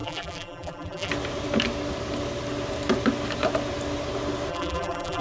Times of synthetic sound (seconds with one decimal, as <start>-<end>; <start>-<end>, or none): 0.0-1.1; 4.5-5.2